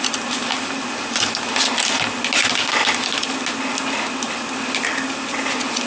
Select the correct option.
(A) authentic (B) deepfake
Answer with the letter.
A